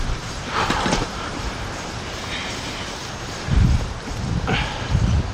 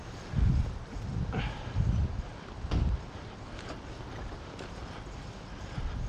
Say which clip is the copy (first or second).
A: first